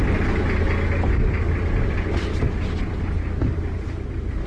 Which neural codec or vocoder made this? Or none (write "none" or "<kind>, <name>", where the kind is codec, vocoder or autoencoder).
none